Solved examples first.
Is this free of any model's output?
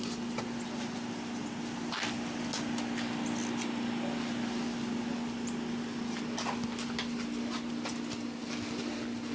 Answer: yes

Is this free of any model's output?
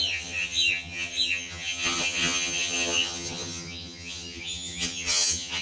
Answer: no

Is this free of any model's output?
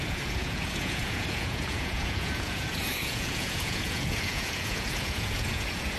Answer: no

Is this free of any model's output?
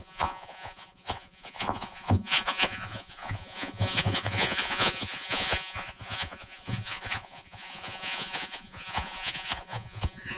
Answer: no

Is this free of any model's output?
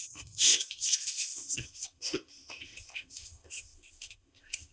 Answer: no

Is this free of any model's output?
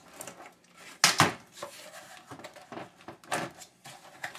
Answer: yes